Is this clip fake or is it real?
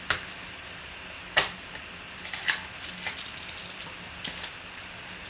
real